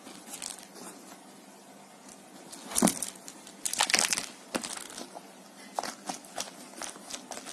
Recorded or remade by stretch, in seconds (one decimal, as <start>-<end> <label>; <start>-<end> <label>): 0.0-7.5 recorded